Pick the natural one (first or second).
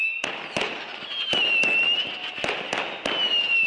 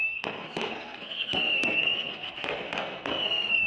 first